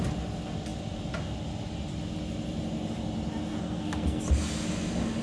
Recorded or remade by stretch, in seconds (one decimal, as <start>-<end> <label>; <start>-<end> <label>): 0.0-3.5 recorded; 3.5-4.2 remade; 4.2-5.2 recorded